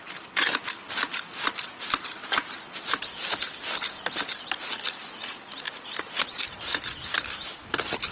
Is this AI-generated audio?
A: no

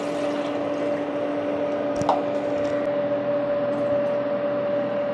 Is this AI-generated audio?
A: no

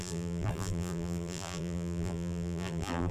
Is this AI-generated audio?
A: yes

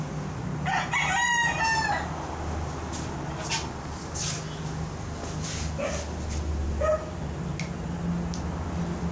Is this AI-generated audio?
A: no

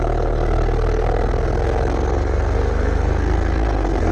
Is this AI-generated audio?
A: yes